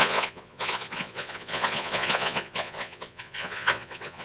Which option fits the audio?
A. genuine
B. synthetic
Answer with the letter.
B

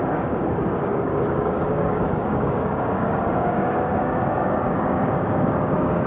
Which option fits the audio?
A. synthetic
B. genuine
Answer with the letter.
A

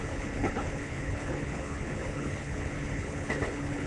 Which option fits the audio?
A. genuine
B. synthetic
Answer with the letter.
B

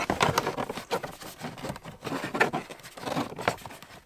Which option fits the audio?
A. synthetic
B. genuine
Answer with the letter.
B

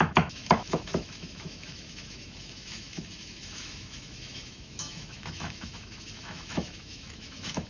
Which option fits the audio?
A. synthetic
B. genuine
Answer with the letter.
A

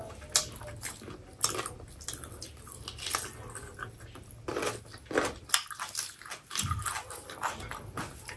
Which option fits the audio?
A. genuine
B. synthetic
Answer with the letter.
A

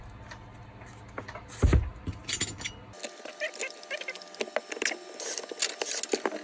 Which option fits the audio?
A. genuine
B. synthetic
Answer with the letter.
A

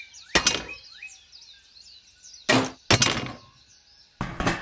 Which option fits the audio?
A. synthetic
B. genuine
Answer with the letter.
B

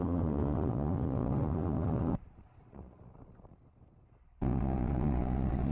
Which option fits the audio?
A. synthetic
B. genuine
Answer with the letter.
A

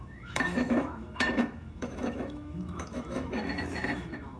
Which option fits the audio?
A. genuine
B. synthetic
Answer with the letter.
B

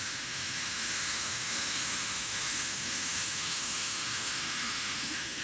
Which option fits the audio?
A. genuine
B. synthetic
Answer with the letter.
B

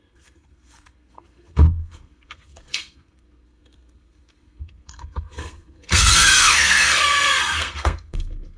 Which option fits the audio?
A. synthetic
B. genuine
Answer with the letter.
A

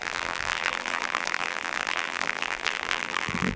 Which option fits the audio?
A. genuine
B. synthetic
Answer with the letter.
B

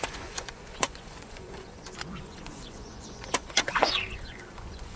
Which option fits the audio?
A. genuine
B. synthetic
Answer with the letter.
B